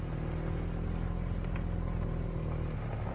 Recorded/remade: recorded